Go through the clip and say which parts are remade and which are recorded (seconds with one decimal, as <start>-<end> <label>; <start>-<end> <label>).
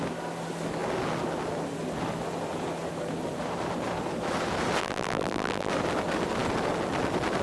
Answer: 0.0-4.8 recorded; 4.8-5.7 remade; 5.7-7.4 recorded